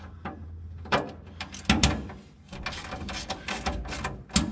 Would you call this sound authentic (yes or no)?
yes